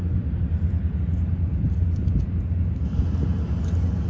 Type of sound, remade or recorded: recorded